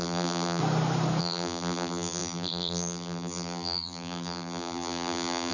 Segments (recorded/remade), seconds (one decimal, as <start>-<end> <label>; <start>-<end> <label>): 0.0-0.6 remade; 0.6-1.2 recorded; 1.2-5.5 remade